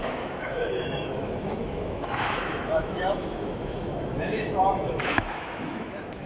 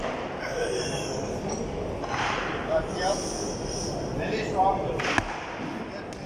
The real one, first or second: second